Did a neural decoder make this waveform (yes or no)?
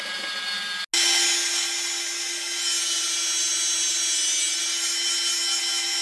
no